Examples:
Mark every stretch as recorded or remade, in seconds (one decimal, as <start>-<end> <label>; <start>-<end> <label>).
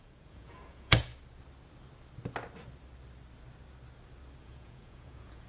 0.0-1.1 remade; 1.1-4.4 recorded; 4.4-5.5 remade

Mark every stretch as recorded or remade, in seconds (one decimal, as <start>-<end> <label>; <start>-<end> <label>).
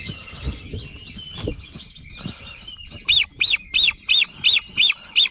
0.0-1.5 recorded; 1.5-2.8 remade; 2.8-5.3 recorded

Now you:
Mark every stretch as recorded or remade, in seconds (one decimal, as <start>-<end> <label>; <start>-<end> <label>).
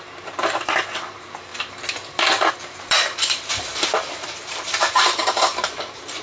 0.0-1.5 remade; 1.5-2.5 recorded; 2.5-6.2 remade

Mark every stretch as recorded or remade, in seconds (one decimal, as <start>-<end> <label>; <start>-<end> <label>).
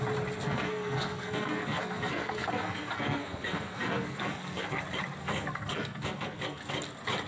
0.0-0.4 recorded; 0.4-4.8 remade; 4.8-5.2 recorded; 5.2-6.7 remade; 6.7-7.3 recorded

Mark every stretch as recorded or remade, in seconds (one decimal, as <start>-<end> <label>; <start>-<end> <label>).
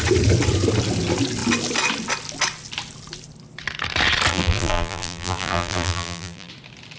0.0-4.3 recorded; 4.3-6.5 remade; 6.5-7.0 recorded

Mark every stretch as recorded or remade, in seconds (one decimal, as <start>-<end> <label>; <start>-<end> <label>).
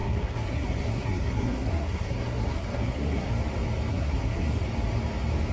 0.0-3.3 remade; 3.3-3.9 recorded; 3.9-4.6 remade; 4.6-5.5 recorded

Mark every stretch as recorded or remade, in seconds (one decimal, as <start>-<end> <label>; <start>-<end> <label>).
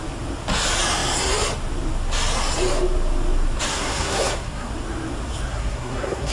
0.0-3.7 recorded; 3.7-4.7 remade; 4.7-5.5 recorded; 5.5-6.3 remade